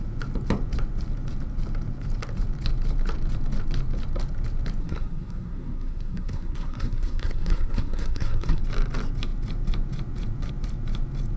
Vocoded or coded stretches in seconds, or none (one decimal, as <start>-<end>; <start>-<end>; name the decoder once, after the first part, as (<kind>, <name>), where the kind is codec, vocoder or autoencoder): 4.8-8.6 (codec, SNAC)